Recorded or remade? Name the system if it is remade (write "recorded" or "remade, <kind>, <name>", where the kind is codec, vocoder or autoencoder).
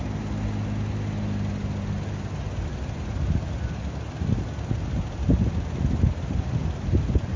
recorded